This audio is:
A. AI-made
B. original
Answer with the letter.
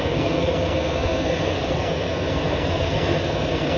A